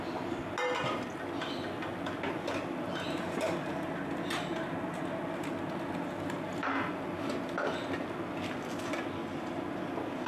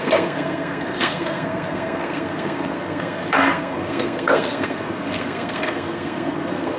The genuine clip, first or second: first